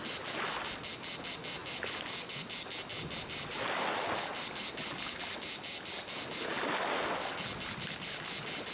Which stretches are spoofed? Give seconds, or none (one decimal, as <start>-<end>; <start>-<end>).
none